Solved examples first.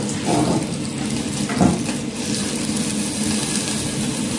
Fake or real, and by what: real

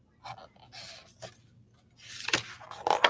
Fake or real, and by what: real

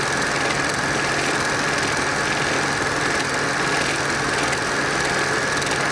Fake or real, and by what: real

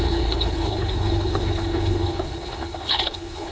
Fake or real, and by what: fake, codec, HILCodec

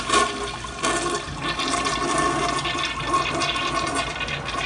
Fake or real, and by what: real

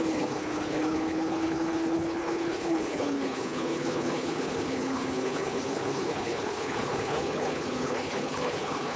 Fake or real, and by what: fake, codec, HILCodec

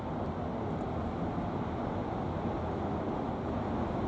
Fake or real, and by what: real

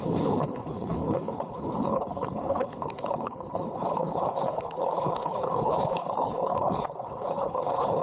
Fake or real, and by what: fake, codec, HILCodec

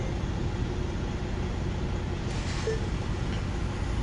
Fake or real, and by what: real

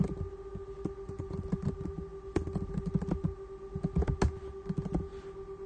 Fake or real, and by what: real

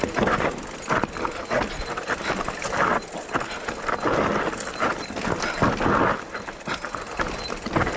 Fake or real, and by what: real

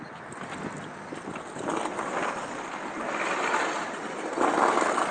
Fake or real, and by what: real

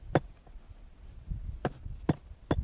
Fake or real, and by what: real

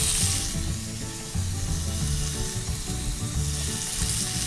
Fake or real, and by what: real